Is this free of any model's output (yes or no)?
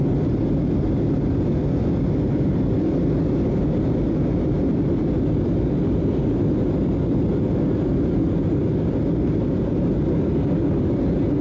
yes